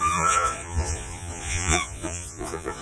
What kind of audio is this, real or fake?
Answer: fake